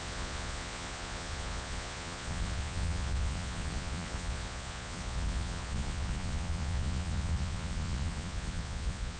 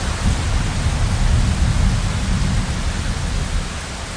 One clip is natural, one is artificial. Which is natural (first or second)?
second